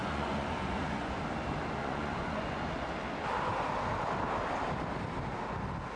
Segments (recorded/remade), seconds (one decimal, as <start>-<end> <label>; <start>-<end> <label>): 0.0-1.2 remade; 1.2-1.8 recorded; 1.8-2.6 remade; 2.6-6.0 recorded